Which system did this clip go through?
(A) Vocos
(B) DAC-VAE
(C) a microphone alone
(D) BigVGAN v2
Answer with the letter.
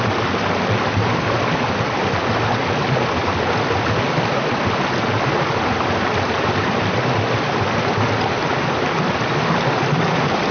C